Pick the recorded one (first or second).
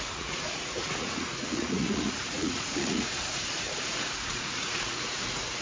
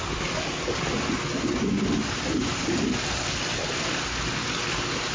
second